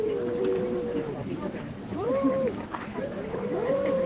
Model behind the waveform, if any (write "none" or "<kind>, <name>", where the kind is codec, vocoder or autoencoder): vocoder, BigVGAN v2